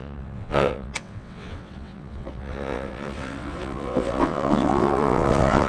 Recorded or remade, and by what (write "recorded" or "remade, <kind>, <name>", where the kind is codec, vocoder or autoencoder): remade, vocoder, WaveNeXt